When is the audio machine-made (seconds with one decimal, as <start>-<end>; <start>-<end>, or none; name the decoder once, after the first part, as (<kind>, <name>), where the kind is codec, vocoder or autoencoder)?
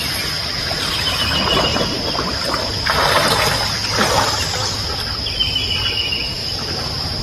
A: 1.7-3.4 (vocoder, BigVGAN v2); 6.4-7.2